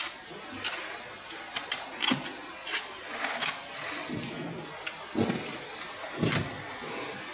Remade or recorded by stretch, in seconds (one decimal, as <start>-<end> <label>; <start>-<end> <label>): 0.0-7.3 recorded